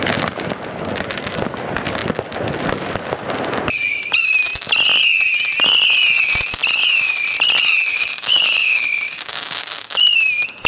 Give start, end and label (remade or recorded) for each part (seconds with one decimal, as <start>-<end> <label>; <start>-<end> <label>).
0.0-7.9 recorded; 7.9-9.6 remade; 9.6-10.7 recorded